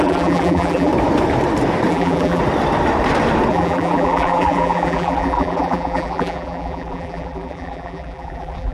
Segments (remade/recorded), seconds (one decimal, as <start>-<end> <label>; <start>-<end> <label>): 0.0-0.9 remade; 0.9-1.9 recorded; 1.9-2.4 remade; 2.4-3.5 recorded; 3.5-8.7 remade